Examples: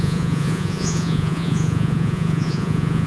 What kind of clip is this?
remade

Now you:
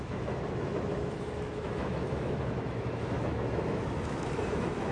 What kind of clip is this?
remade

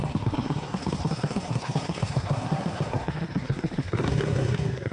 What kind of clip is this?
remade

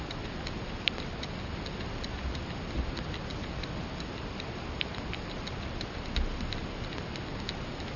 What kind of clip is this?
recorded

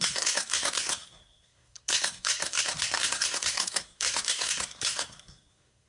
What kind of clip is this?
remade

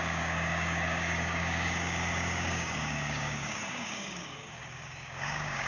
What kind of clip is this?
remade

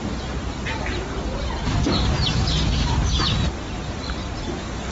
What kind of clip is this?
recorded